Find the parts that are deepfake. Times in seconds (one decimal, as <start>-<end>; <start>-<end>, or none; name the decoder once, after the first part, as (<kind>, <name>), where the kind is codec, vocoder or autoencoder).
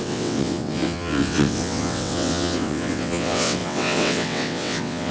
0.0-5.1 (vocoder, WaveNeXt)